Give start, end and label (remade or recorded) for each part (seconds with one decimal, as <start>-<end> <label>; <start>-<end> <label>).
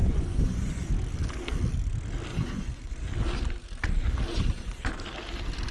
0.0-0.9 remade; 0.9-2.3 recorded; 2.3-2.9 remade; 2.9-4.3 recorded; 4.3-4.9 remade; 4.9-5.7 recorded